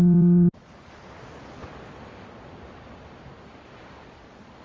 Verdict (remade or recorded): recorded